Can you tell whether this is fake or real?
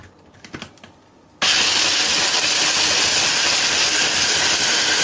real